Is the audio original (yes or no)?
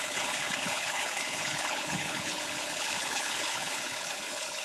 no